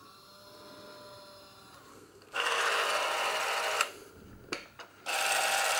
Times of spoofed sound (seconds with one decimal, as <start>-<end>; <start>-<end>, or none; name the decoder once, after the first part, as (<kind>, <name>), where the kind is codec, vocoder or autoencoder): 1.9-2.6 (codec, SNAC)